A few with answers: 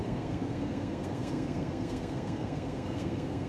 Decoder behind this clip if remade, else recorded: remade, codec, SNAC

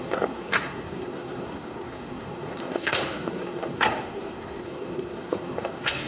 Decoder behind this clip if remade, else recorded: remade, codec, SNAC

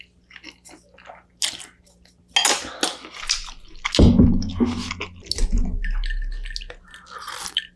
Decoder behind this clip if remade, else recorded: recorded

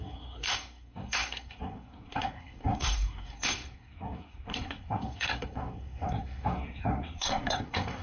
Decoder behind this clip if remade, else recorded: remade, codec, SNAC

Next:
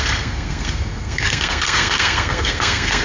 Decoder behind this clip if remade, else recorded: remade, codec, SNAC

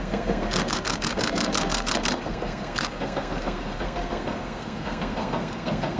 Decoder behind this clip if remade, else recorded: remade, codec, SNAC